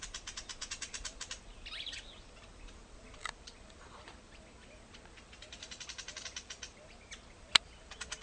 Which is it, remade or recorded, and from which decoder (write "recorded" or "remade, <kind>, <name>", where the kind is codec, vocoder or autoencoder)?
remade, vocoder, BigVGAN v2